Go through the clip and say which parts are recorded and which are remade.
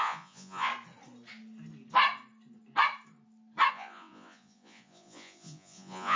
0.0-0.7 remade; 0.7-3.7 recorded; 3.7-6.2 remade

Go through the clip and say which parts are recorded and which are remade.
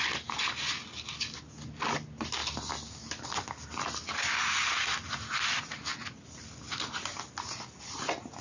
0.0-8.4 recorded